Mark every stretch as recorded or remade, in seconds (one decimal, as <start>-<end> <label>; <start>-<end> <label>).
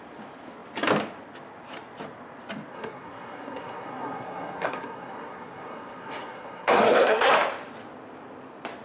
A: 0.0-2.7 recorded; 2.7-7.3 remade; 7.3-8.8 recorded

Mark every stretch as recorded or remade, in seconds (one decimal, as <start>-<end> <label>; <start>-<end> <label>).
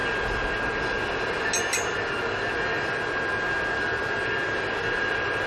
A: 0.0-5.5 recorded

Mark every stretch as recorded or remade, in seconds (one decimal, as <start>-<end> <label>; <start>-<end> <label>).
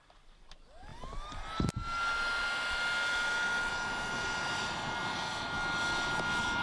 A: 0.0-6.6 recorded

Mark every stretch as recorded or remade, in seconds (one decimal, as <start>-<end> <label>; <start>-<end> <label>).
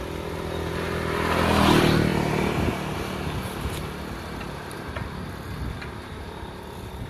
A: 0.0-7.1 recorded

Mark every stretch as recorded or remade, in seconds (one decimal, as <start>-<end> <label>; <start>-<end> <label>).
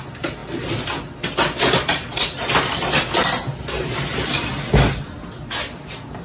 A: 0.0-6.2 recorded